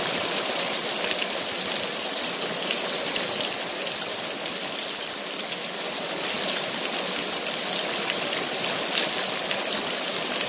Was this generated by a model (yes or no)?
no